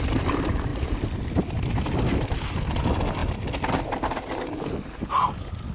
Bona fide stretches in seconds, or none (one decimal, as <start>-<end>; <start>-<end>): 0.0-0.7; 2.8-5.7